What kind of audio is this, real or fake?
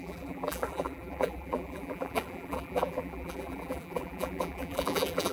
fake